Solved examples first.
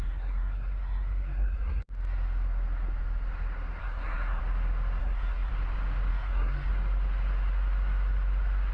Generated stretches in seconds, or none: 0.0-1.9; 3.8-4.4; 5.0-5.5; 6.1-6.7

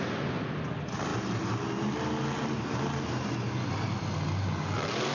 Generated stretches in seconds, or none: none

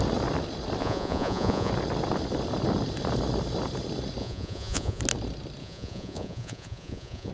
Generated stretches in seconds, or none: 0.8-1.7; 4.2-5.0; 5.6-7.3

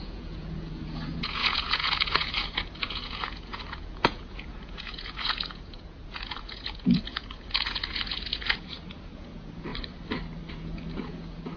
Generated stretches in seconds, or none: 0.0-9.7; 10.5-11.6

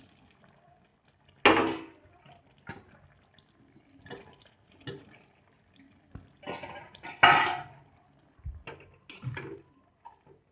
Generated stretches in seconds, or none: none

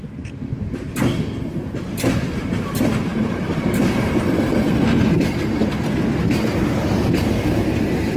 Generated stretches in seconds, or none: 3.1-4.2